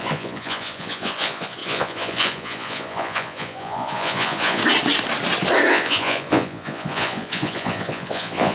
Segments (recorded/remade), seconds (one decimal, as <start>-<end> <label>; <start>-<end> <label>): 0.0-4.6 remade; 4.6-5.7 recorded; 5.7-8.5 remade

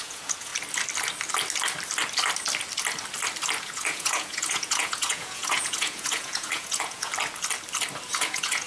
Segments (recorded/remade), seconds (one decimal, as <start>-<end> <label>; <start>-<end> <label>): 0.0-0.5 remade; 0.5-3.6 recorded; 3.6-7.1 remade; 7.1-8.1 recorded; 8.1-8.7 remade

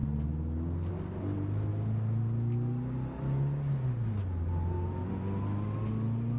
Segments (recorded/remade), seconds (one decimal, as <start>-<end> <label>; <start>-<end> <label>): 0.0-6.4 recorded

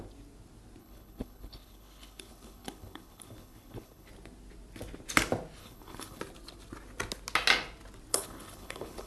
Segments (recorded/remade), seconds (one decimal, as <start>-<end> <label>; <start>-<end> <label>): 0.0-0.8 recorded; 0.8-4.1 remade; 4.1-5.6 recorded; 5.6-6.2 remade; 6.2-8.1 recorded; 8.1-9.1 remade

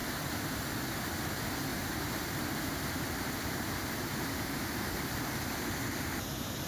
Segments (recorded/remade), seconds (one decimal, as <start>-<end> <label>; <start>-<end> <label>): 0.0-1.7 recorded; 1.7-4.9 remade; 4.9-6.7 recorded

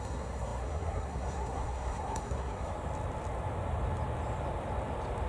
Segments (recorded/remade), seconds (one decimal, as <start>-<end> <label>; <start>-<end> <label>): 0.0-2.7 remade; 2.7-5.3 recorded